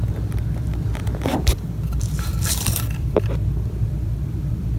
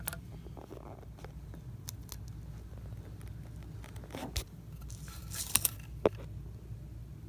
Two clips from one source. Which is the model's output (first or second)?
first